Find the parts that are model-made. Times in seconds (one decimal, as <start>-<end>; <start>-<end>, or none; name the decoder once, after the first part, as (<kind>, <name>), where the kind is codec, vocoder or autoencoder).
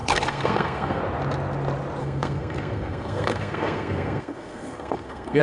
0.0-1.0 (codec, SNAC); 2.0-5.4